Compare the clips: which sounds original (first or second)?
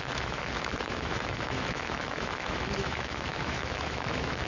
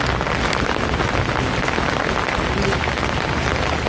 second